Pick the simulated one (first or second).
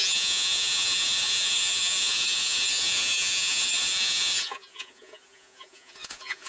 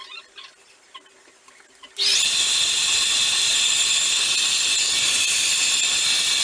first